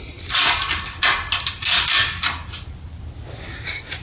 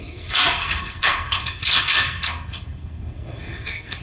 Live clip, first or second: first